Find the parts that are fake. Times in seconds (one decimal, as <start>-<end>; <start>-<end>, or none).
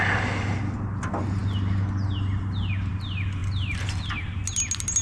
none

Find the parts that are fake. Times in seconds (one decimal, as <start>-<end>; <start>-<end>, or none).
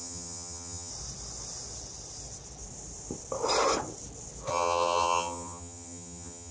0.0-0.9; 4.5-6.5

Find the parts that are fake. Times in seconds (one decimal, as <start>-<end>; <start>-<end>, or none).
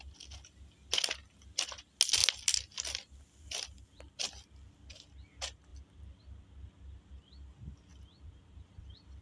2.2-4.5; 5.7-7.1; 7.9-9.2